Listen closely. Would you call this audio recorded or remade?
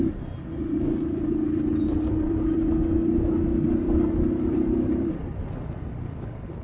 remade